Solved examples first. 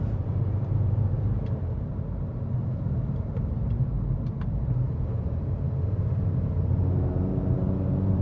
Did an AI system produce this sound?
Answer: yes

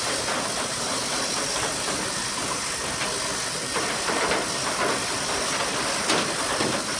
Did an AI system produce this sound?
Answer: no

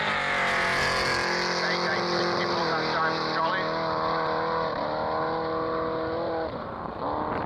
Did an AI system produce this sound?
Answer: no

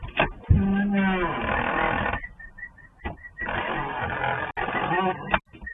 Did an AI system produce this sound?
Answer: no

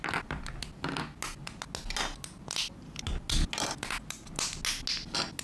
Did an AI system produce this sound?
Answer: no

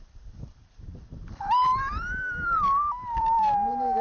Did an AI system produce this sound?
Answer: yes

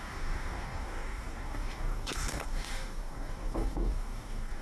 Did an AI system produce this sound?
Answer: yes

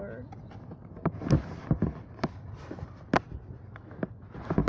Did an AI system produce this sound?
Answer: no